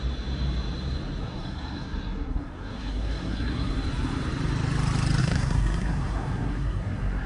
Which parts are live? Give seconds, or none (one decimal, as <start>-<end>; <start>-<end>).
0.0-1.2; 3.7-5.2